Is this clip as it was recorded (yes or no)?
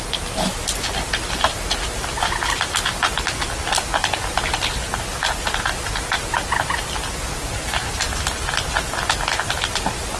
yes